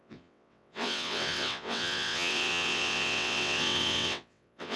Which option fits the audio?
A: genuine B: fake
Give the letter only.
B